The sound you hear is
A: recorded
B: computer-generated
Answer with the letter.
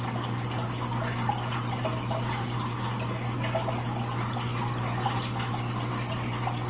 A